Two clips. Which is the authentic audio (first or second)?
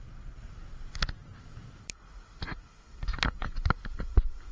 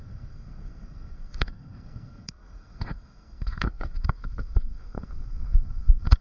first